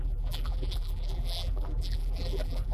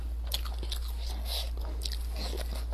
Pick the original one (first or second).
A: second